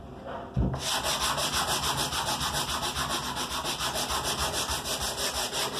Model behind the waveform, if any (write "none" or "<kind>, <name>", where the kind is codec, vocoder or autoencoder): none